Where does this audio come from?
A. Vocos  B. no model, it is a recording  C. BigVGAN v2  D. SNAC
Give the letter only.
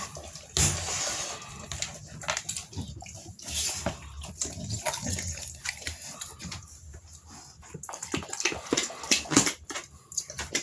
B